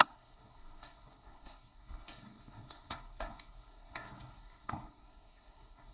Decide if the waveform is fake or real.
fake